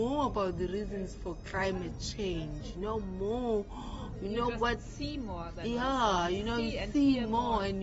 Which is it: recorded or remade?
recorded